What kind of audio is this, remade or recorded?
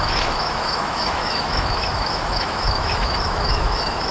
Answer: remade